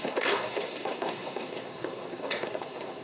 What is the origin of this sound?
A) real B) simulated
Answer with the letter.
B